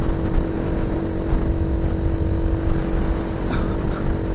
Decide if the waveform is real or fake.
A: real